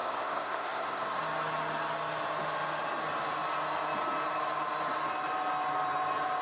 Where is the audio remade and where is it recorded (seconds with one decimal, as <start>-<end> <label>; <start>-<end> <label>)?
0.0-1.2 remade; 1.2-6.4 recorded

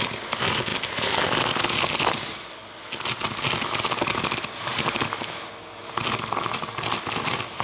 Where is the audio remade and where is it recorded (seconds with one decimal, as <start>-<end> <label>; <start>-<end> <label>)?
0.0-7.6 recorded

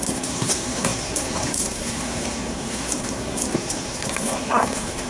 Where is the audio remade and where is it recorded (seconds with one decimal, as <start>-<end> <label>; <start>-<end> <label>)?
0.0-5.1 remade